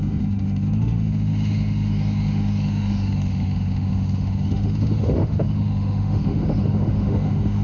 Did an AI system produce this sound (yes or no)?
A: yes